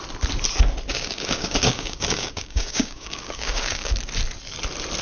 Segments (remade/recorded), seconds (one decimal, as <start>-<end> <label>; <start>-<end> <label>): 0.0-0.9 recorded; 0.9-3.9 remade; 3.9-5.0 recorded